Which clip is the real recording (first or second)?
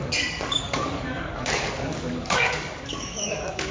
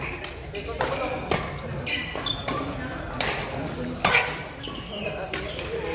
second